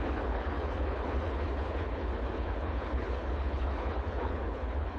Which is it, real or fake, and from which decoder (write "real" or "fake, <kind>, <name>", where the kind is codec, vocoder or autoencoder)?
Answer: fake, codec, HILCodec